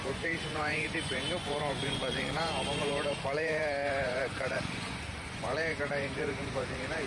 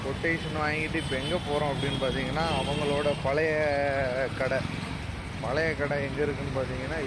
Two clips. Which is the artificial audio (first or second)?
first